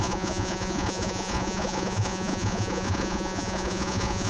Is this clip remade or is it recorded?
remade